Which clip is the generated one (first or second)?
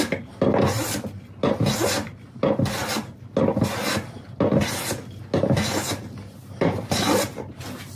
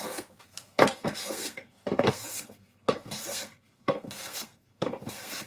second